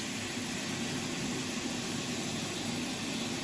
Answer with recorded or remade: recorded